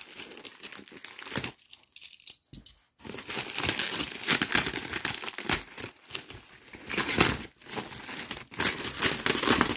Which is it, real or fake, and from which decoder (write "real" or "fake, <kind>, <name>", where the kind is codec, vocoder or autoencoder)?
real